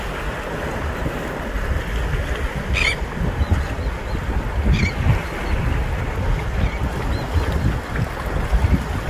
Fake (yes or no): no